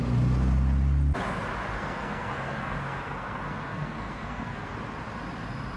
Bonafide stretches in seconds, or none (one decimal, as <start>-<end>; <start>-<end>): 0.0-1.7; 4.7-5.8